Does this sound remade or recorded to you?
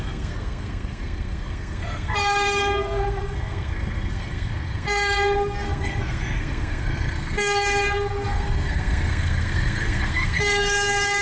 remade